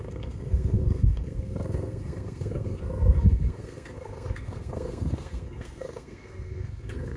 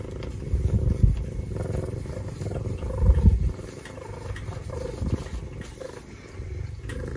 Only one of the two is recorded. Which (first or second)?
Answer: second